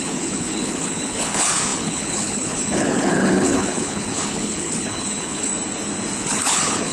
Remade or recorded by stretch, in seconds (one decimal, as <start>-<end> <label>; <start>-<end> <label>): 0.0-5.5 remade; 5.5-6.2 recorded; 6.2-6.9 remade